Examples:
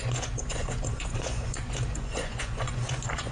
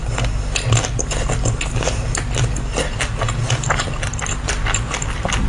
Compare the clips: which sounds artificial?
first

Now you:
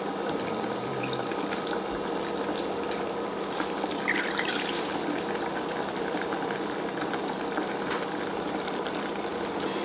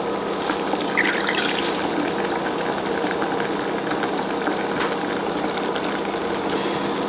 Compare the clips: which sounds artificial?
first